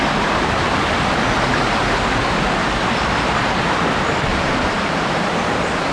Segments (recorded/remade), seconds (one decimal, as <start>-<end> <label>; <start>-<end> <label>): 0.0-4.3 recorded; 4.3-5.4 remade; 5.4-5.9 recorded